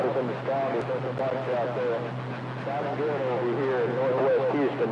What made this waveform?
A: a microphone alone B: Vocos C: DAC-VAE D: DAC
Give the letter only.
A